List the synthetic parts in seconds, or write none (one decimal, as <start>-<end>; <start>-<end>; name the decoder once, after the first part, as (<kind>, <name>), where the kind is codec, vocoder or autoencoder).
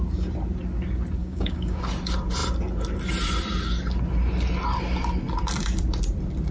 1.2-1.8 (codec, DAC)